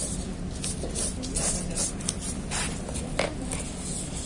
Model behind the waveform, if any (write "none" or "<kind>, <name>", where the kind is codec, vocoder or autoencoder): none